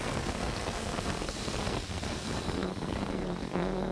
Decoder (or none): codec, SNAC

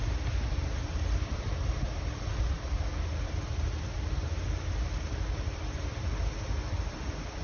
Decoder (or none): none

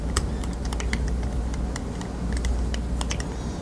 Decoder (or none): none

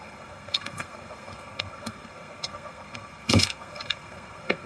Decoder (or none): codec, SNAC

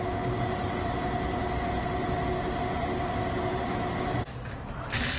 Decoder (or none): none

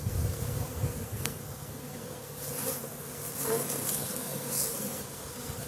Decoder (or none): codec, SNAC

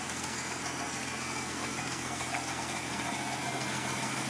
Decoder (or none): codec, SNAC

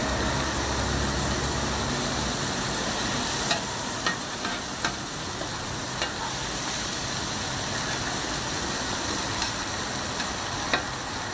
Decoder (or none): none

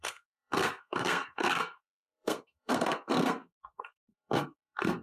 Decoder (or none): codec, SNAC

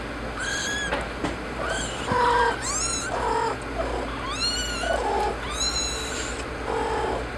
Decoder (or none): none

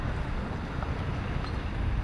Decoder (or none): none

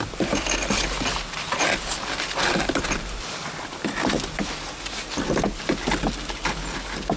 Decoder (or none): none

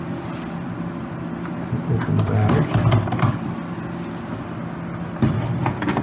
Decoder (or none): none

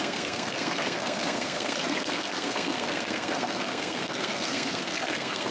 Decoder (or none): codec, SNAC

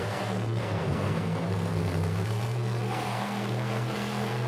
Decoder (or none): codec, SNAC